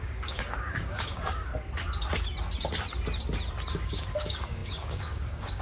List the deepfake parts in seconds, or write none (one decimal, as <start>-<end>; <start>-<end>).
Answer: 0.0-1.5; 3.7-5.6